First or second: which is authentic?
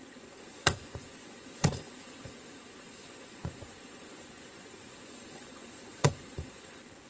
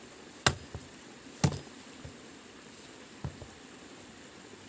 second